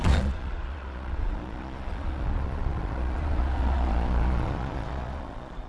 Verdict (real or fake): fake